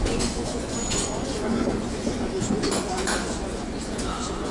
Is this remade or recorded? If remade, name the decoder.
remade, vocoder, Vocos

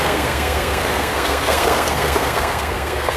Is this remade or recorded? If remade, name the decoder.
remade, codec, SNAC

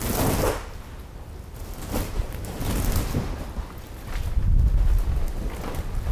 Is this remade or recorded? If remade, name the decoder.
recorded